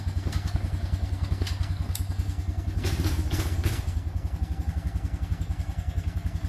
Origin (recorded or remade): remade